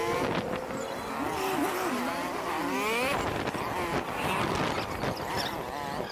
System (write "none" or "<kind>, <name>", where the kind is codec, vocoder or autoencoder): none